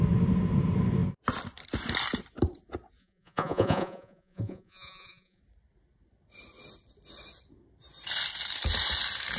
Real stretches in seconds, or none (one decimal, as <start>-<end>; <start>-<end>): 0.0-3.0; 5.4-9.4

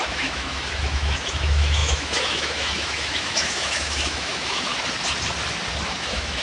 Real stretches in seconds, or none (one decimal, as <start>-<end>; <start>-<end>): 4.7-5.8

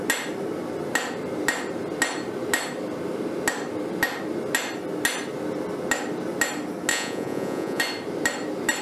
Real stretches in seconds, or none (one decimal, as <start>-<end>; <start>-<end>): 0.0-6.9; 7.8-8.8

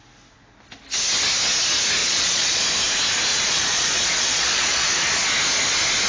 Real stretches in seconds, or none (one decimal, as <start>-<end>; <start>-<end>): 0.0-2.0; 2.6-3.3; 4.9-6.1

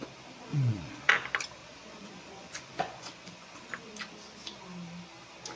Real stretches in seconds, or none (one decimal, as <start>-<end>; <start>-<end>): 0.0-0.5; 1.1-1.6; 3.6-5.6

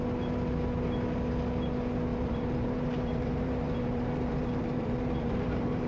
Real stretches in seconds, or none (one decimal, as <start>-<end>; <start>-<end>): 0.0-2.1

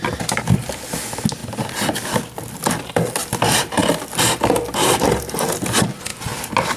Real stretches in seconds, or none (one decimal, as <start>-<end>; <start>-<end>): 0.0-6.8